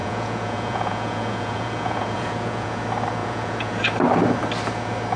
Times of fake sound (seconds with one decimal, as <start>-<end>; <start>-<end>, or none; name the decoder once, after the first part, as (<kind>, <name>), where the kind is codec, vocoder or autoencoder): 0.0-2.8 (vocoder, Vocos); 3.2-3.8